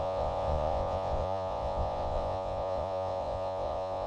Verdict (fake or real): fake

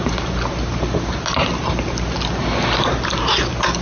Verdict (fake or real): real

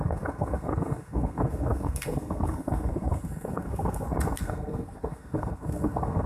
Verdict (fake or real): fake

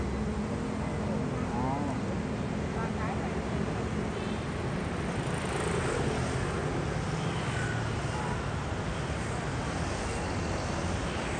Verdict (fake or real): real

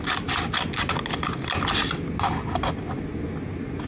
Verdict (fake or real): real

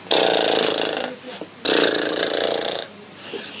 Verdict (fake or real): real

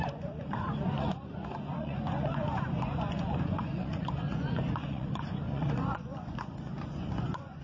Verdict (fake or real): fake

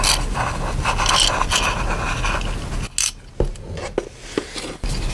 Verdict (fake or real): real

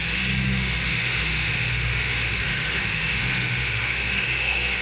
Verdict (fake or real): fake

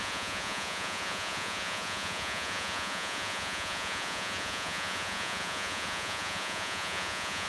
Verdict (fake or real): fake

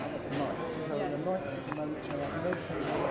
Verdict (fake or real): real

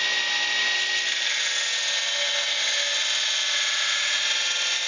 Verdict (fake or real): real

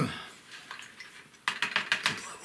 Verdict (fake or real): real